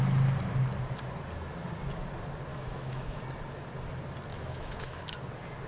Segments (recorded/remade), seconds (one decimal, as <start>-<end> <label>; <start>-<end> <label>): 0.0-2.5 recorded; 2.5-3.2 remade; 3.2-4.3 recorded; 4.3-5.0 remade; 5.0-5.7 recorded